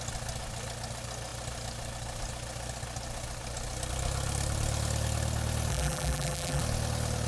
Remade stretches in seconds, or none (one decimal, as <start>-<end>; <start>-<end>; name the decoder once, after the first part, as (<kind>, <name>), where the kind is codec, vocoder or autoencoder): 5.7-6.6 (vocoder, BigVGAN v2)